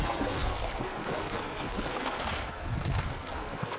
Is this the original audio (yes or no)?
no